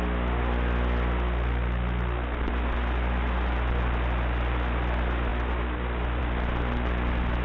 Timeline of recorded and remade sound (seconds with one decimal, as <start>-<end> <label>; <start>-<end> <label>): 0.0-7.4 recorded